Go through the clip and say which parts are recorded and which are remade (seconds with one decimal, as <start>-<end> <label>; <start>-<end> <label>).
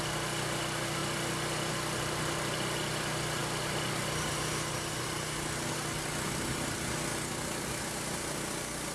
0.0-8.9 recorded